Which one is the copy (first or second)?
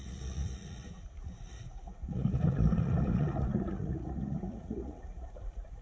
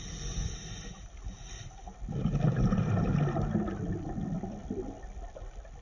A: first